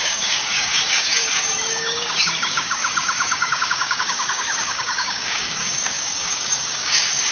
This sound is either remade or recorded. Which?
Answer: remade